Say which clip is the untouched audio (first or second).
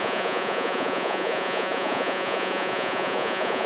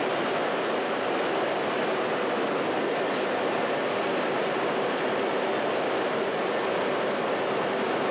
second